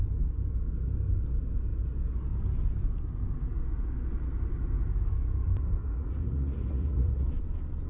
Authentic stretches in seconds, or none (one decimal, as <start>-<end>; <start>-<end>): 0.0-5.8; 7.3-7.9